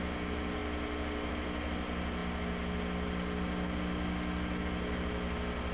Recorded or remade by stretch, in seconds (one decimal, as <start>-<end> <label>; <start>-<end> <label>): 0.0-5.7 recorded